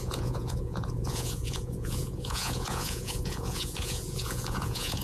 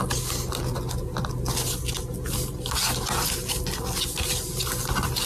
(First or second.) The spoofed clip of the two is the first